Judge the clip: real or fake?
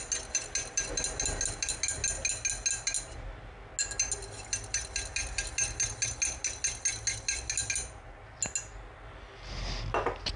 real